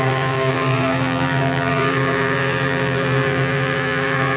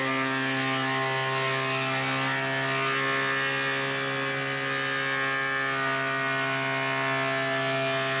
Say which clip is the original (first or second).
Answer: second